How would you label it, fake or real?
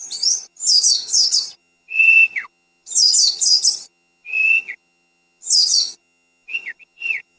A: fake